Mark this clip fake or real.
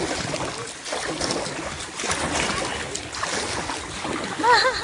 real